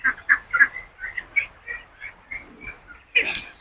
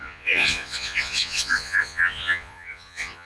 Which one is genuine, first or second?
first